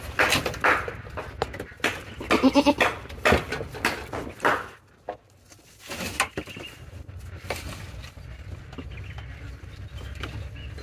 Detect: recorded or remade recorded